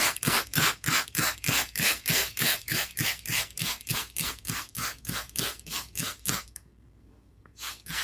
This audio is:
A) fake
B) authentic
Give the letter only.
A